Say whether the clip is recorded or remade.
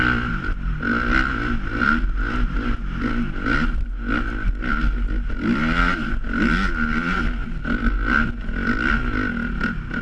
recorded